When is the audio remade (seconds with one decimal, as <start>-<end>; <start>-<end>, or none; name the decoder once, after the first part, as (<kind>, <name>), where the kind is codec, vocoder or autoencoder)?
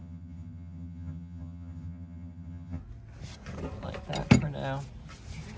0.0-2.8 (vocoder, HiFi-GAN)